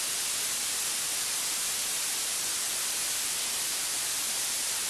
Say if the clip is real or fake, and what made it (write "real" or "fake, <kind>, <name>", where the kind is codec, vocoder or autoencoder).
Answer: real